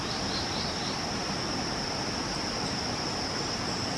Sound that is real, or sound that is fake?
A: real